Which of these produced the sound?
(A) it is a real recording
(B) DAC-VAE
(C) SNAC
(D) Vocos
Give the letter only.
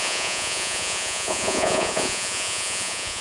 D